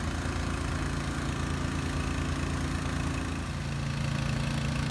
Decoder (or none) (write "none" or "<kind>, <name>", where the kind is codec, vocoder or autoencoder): none